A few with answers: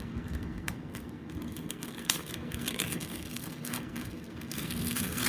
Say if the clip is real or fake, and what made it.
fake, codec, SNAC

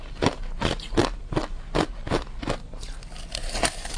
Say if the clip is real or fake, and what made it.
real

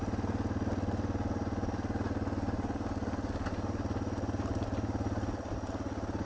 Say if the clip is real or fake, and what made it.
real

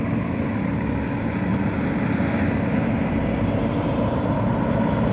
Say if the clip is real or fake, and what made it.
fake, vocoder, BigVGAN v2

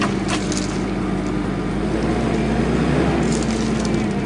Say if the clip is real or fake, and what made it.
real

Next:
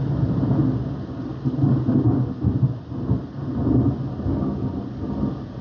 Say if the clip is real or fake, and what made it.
real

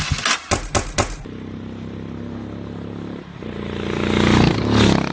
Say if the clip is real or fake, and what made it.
real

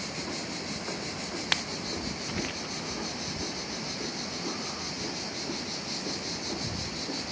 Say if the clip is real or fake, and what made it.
real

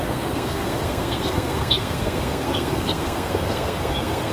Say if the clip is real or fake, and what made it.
fake, codec, SNAC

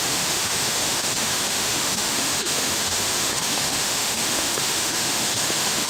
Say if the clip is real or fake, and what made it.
fake, autoencoder, DAC-VAE